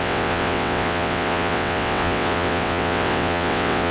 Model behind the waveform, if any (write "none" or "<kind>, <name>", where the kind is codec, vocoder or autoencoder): vocoder, WaveNeXt